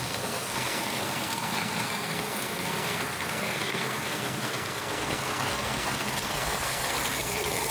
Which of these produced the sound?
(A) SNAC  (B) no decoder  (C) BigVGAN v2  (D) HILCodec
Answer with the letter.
A